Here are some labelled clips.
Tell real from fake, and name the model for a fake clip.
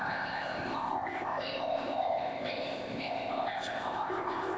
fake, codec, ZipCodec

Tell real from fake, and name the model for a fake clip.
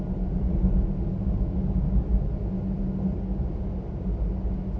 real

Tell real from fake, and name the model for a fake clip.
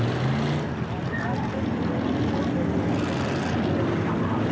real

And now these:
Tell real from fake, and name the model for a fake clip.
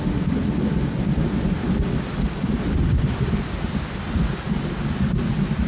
real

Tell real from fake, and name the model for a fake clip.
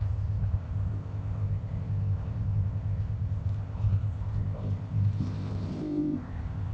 fake, codec, ZipCodec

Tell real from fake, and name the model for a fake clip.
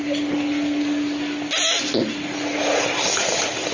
real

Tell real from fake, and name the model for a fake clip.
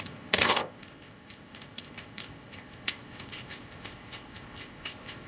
fake, codec, ZipCodec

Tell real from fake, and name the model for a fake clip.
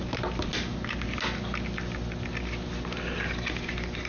real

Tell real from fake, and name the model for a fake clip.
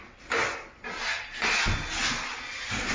real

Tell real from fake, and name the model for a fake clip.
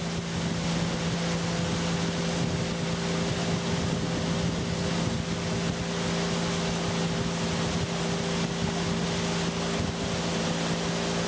real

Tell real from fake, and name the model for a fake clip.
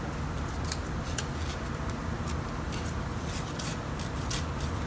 real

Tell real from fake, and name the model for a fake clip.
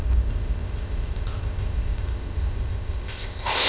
fake, codec, ZipCodec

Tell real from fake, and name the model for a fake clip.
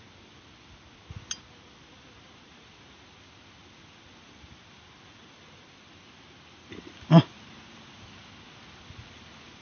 real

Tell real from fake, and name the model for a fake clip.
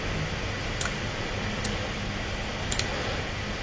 real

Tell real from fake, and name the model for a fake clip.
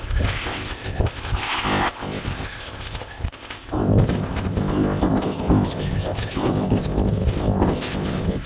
fake, codec, ZipCodec